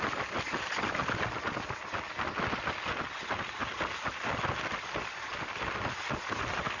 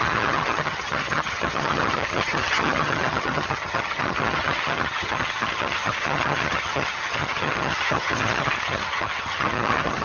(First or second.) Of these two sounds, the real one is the first